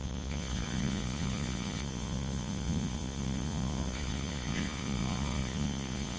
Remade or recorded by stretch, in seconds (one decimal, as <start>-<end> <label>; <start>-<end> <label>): 0.0-6.2 remade